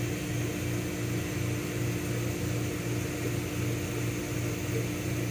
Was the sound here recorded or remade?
recorded